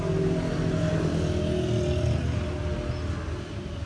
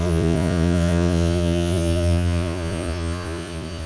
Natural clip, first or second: first